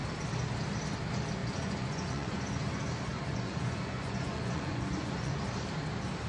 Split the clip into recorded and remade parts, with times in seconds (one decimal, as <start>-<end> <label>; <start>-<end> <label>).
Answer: 0.0-1.4 recorded; 1.4-2.6 remade; 2.6-3.1 recorded; 3.1-5.4 remade; 5.4-6.3 recorded